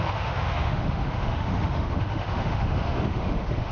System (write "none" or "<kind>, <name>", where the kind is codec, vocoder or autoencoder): autoencoder, DAC-VAE